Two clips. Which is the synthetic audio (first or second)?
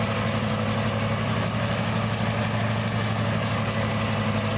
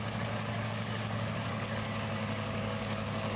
second